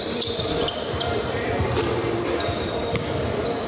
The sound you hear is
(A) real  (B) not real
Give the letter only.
B